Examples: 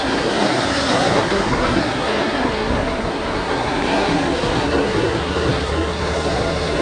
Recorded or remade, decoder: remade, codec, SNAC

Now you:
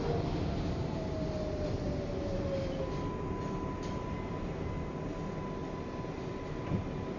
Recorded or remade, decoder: recorded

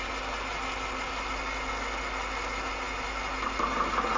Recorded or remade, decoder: recorded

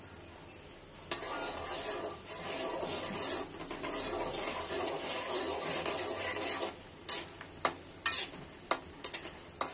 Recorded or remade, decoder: recorded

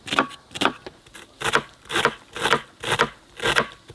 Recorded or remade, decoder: recorded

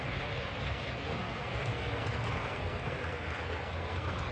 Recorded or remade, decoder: remade, codec, SNAC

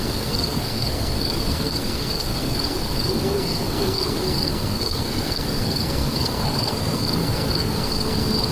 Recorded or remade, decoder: remade, codec, SNAC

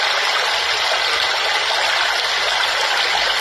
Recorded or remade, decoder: recorded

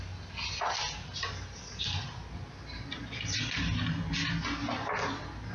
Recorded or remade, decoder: recorded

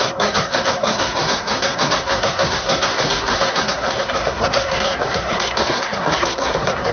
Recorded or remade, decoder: remade, codec, SNAC